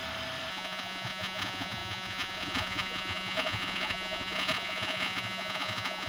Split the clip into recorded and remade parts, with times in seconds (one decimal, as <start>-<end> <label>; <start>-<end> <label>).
0.0-0.5 recorded; 0.5-6.1 remade